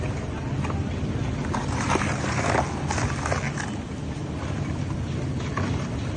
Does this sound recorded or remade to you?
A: recorded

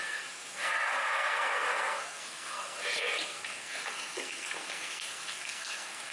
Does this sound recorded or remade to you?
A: remade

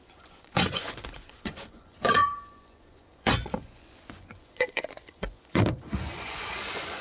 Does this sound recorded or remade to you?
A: remade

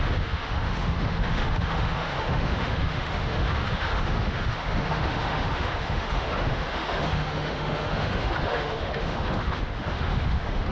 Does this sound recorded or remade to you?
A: remade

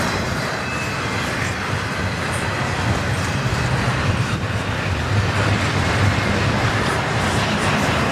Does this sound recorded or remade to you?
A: remade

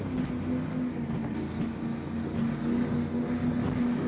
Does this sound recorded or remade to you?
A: recorded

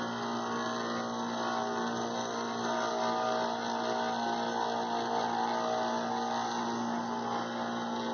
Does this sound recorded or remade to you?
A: recorded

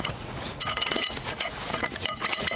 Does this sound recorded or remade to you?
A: remade